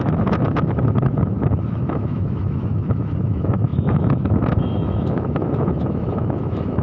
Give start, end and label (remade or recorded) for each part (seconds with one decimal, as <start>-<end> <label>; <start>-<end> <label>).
0.0-6.8 remade